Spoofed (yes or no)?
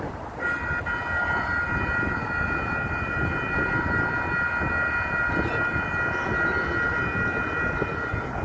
no